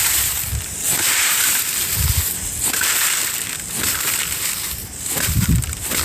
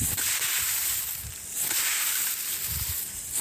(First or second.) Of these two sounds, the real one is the second